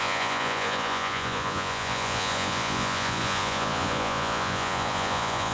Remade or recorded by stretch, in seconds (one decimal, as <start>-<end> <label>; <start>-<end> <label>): 0.0-5.5 remade